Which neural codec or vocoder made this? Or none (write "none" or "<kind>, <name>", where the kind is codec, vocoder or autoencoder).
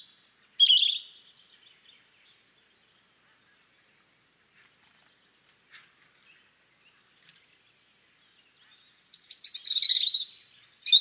none